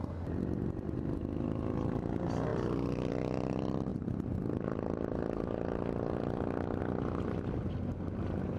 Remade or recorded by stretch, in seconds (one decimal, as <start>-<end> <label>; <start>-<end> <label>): 0.0-2.5 recorded; 2.5-3.1 remade; 3.1-3.9 recorded; 3.9-6.8 remade; 6.8-8.6 recorded